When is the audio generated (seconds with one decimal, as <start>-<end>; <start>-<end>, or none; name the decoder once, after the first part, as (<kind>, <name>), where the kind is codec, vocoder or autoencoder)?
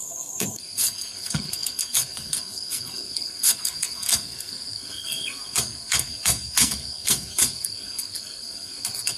0.0-9.2 (codec, SNAC)